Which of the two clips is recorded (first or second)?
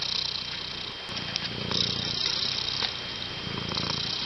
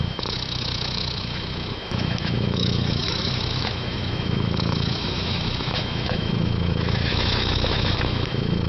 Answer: first